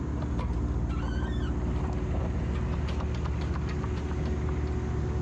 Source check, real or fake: real